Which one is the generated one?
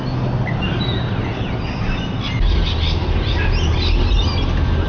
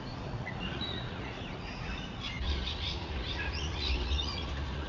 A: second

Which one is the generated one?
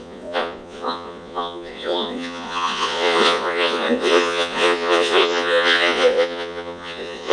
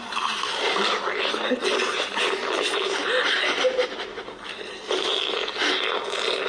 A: first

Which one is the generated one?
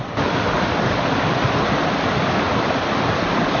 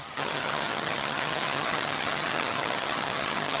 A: second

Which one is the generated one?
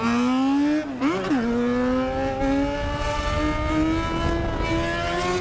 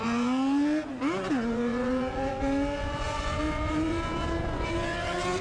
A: second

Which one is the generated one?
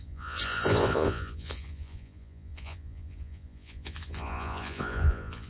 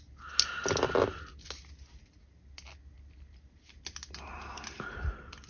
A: first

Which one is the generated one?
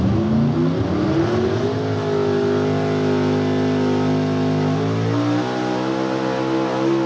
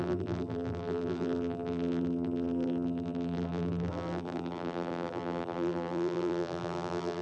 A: second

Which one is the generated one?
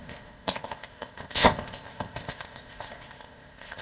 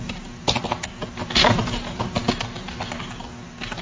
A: first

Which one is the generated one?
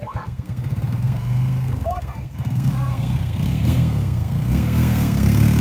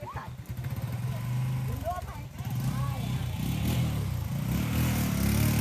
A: first